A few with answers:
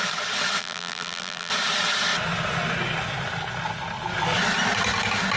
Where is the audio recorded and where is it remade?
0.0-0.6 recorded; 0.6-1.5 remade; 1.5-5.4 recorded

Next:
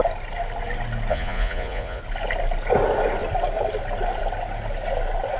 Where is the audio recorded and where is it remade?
0.0-1.1 recorded; 1.1-2.0 remade; 2.0-5.4 recorded

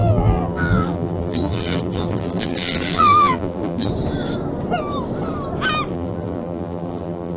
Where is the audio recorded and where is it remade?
0.0-3.9 remade; 3.9-5.9 recorded; 5.9-7.4 remade